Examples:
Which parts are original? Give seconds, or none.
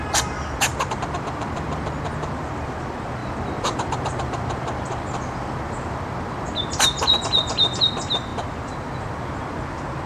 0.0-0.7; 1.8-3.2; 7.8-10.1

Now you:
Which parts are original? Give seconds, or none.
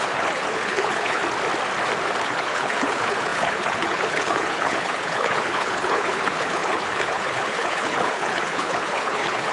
1.2-2.2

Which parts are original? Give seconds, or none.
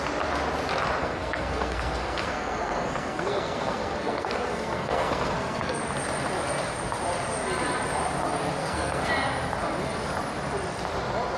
0.0-1.0; 5.8-8.6; 9.1-11.4